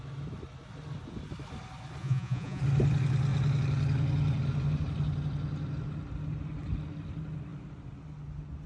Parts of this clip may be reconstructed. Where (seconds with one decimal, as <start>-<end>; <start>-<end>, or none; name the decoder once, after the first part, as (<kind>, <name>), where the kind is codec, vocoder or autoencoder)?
2.0-2.6 (vocoder, Vocos)

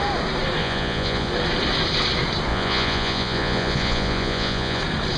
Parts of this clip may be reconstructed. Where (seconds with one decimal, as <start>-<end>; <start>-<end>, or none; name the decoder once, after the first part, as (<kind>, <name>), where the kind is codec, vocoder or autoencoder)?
0.6-1.3 (vocoder, Vocos); 2.5-4.8

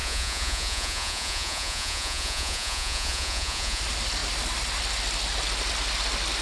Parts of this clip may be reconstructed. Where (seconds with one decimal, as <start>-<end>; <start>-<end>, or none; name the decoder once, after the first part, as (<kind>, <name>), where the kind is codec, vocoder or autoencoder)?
0.0-3.8 (vocoder, Vocos)